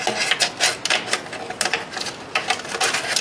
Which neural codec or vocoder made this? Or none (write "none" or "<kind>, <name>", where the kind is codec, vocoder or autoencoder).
none